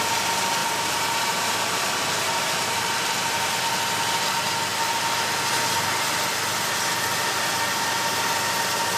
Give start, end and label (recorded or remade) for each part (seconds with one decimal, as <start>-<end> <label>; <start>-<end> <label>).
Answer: 0.0-0.6 recorded; 0.6-3.5 remade; 3.5-9.0 recorded